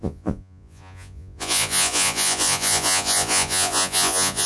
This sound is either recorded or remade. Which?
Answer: remade